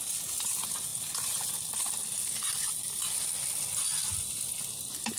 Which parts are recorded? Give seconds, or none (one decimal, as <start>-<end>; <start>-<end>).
0.0-5.2